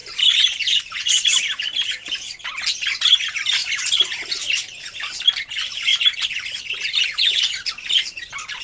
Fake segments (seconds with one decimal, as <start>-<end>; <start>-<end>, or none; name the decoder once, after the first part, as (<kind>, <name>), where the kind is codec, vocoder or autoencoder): 3.6-4.3 (vocoder, BigVGAN v2); 5.9-6.6